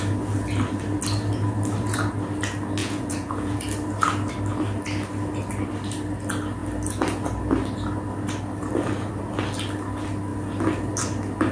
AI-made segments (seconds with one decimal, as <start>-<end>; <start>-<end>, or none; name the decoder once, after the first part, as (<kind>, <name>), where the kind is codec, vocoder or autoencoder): 2.8-3.6 (vocoder, Vocos)